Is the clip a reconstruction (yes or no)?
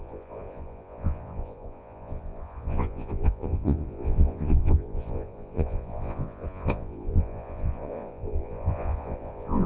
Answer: yes